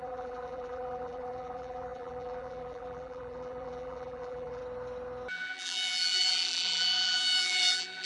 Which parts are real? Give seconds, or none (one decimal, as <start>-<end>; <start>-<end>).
4.6-5.3